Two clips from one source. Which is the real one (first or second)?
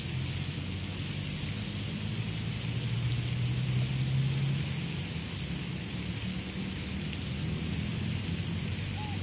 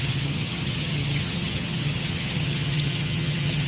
first